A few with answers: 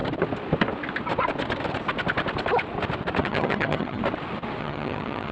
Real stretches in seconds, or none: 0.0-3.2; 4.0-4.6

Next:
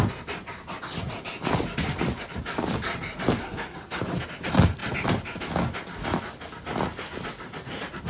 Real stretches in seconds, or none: 0.0-3.4; 4.0-8.1

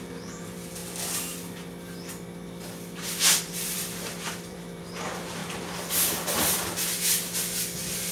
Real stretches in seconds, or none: 0.8-3.4; 5.4-8.1

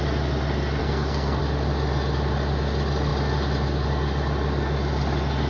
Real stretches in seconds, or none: 0.0-0.8; 1.4-5.5

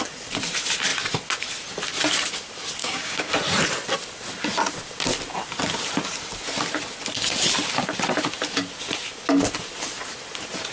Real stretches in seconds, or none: 0.0-2.8; 3.3-10.7

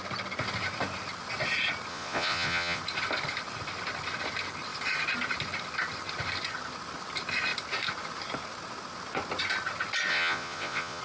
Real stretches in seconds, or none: 0.0-1.9; 2.8-10.1